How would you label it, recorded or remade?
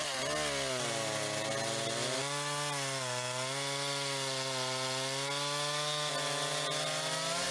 recorded